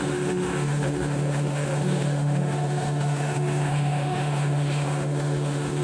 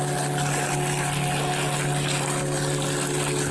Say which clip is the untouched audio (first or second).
second